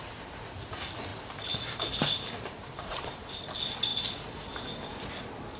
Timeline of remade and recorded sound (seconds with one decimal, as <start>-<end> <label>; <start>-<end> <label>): 0.0-1.1 recorded; 1.1-3.4 remade; 3.4-5.6 recorded